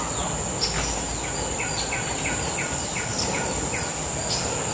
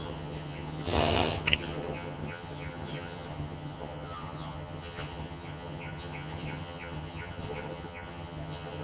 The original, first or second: first